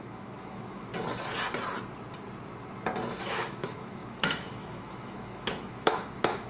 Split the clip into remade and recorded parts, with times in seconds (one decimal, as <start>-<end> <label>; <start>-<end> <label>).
0.0-0.9 remade; 0.9-3.2 recorded; 3.2-6.5 remade